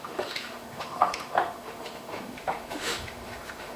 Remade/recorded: remade